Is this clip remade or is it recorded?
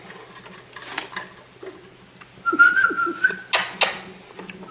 recorded